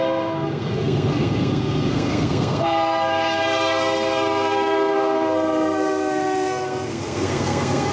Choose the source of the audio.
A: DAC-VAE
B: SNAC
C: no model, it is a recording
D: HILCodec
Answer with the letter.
B